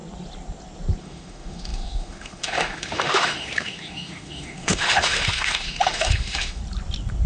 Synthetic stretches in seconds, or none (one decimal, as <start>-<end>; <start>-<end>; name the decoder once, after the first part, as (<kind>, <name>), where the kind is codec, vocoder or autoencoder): 1.0-6.6 (autoencoder, DAC-VAE)